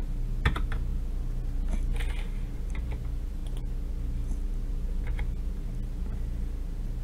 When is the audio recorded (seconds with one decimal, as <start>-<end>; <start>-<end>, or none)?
0.0-7.0